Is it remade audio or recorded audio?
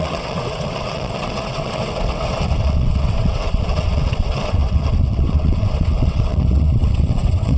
remade